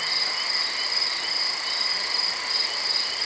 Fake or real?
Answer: real